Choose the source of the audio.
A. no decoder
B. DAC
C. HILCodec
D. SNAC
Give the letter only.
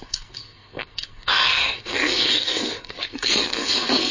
D